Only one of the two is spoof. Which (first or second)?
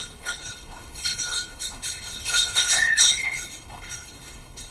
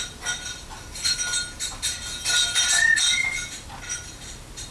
first